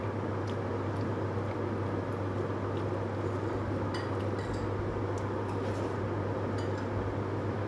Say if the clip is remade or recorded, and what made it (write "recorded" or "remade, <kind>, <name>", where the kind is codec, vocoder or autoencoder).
recorded